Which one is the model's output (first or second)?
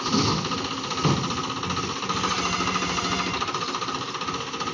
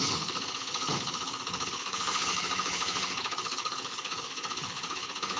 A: second